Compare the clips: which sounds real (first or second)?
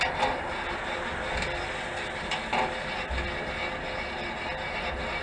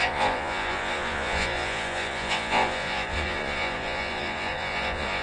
first